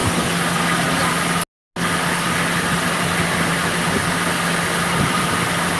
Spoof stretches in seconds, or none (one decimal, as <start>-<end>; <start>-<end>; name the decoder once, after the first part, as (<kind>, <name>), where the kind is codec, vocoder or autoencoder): none